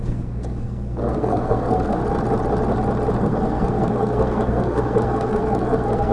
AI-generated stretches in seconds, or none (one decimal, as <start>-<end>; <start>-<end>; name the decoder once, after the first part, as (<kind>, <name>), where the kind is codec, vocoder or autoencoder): 0.0-2.0 (codec, SNAC); 3.2-6.1